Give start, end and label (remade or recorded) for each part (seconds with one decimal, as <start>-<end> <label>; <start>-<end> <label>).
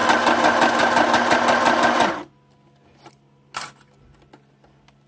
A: 0.0-5.1 recorded